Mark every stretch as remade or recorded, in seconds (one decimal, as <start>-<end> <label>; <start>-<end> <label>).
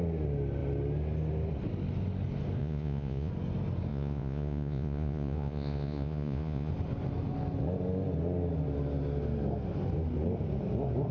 0.0-2.6 recorded; 2.6-3.3 remade; 3.3-3.9 recorded; 3.9-6.7 remade; 6.7-11.1 recorded